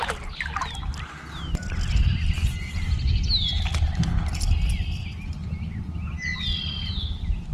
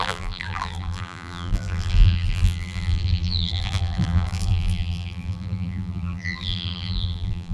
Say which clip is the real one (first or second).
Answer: first